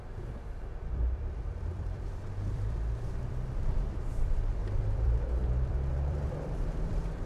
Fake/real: fake